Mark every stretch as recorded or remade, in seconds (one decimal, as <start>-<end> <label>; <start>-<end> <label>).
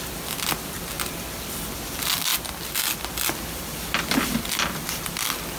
0.0-5.6 recorded